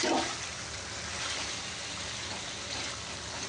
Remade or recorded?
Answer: recorded